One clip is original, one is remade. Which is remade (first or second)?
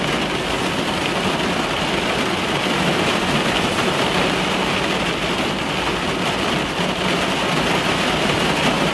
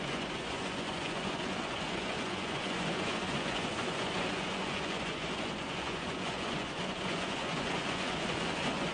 second